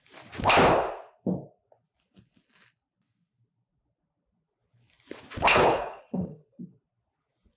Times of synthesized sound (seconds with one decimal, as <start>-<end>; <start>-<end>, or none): 5.5-6.6